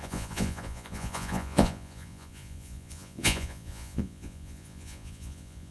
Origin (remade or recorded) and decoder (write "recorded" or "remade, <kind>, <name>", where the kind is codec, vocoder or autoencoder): remade, vocoder, Vocos